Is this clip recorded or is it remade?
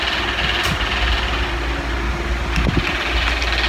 recorded